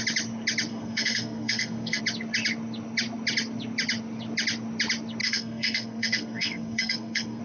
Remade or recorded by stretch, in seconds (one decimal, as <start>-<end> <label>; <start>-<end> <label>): 0.0-0.7 recorded; 0.7-2.0 remade; 2.0-5.2 recorded; 5.2-7.4 remade